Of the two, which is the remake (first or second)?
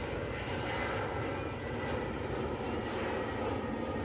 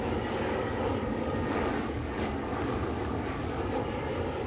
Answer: second